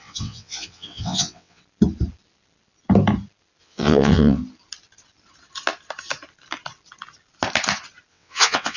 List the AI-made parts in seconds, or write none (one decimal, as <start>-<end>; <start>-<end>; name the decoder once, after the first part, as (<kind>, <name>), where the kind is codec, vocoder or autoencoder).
0.0-1.6 (vocoder, WaveNeXt); 3.6-4.4; 8.1-8.8